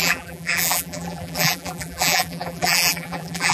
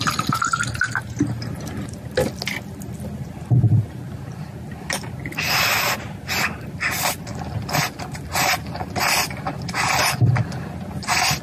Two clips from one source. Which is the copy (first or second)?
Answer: first